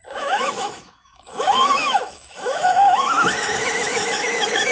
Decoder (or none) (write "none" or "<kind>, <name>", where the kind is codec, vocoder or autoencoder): autoencoder, DAC-VAE